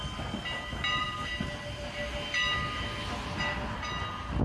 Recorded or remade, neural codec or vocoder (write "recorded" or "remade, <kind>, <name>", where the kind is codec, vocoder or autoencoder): recorded